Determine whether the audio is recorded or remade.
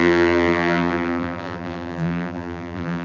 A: remade